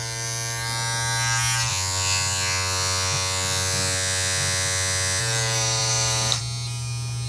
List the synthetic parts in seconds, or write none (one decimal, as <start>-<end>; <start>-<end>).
1.7-5.2

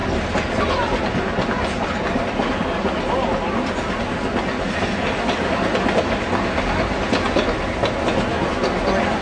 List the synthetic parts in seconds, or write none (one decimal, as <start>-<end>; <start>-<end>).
none

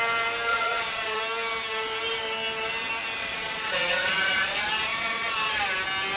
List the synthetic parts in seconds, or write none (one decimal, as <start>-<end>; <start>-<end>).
0.5-1.2; 3.2-5.6

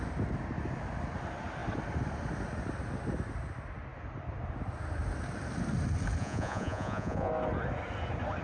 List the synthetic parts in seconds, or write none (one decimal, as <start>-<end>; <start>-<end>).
6.2-7.3